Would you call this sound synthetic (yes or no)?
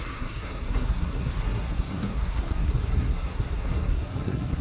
yes